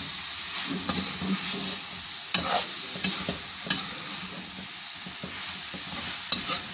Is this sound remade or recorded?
recorded